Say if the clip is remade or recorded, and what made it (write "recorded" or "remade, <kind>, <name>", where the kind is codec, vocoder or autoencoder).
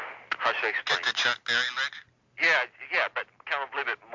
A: recorded